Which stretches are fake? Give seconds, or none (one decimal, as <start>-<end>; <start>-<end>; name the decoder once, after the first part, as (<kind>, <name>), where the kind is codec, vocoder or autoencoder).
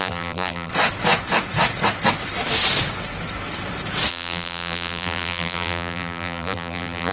0.0-0.7 (vocoder, BigVGAN v2); 4.1-7.1